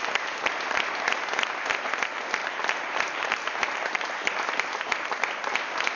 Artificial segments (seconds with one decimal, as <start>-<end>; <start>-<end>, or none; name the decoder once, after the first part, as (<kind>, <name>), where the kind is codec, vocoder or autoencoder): 2.4-6.0 (vocoder, BigVGAN v2)